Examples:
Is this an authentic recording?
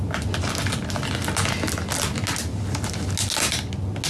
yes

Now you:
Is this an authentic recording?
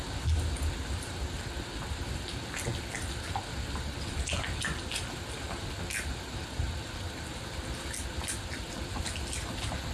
yes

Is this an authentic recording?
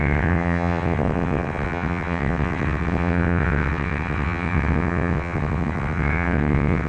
no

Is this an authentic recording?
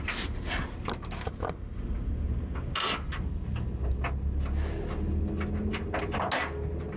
yes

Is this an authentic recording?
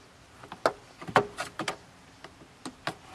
yes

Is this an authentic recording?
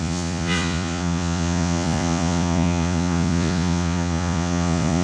no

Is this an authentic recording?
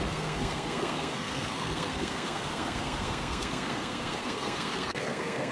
no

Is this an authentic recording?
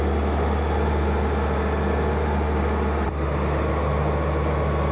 yes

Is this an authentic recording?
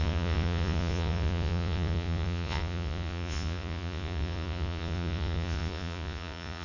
no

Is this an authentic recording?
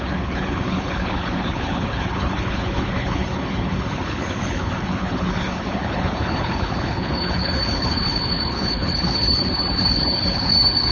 no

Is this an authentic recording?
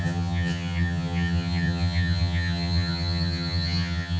no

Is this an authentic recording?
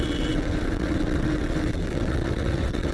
no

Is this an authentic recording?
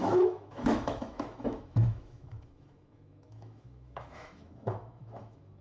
no